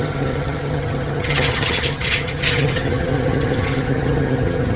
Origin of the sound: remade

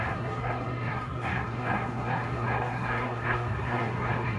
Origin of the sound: remade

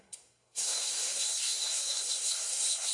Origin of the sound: remade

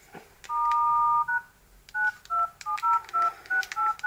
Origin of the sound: recorded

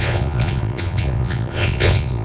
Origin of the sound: remade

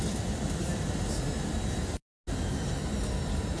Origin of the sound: recorded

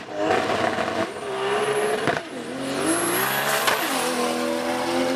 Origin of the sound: recorded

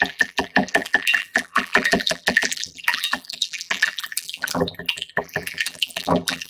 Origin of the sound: remade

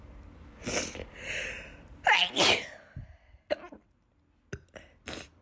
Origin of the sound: recorded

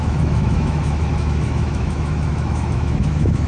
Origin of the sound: remade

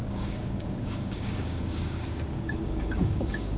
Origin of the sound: remade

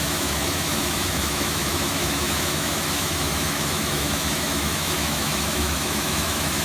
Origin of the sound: remade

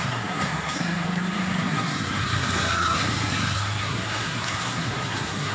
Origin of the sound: remade